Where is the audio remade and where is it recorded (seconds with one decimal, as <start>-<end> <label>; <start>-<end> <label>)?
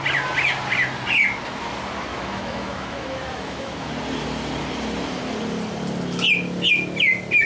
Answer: 0.0-2.1 recorded; 2.1-3.9 remade; 3.9-7.5 recorded